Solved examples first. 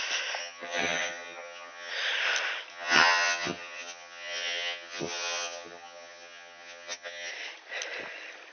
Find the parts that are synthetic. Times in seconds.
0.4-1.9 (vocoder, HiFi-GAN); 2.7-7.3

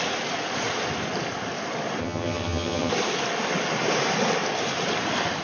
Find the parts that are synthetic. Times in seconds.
2.0-2.9 (vocoder, HiFi-GAN)

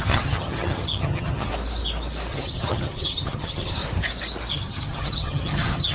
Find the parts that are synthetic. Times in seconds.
0.0-1.5 (vocoder, HiFi-GAN); 2.3-3.8; 4.5-5.9

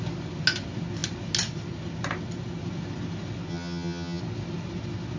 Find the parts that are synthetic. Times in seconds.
3.5-4.2 (vocoder, HiFi-GAN)